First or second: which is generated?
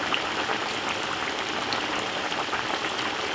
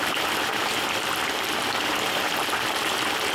second